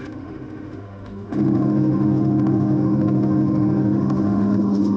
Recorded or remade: remade